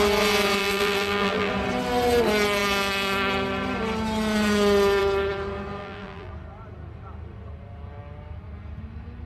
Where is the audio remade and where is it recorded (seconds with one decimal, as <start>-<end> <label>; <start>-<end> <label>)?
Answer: 0.0-0.6 recorded; 0.6-1.5 remade; 1.5-5.8 recorded; 5.8-6.3 remade; 6.3-9.3 recorded